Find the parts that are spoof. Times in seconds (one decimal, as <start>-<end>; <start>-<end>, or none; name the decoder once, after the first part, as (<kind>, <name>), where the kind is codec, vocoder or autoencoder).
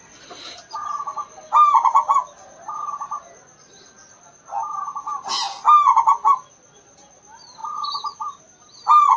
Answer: none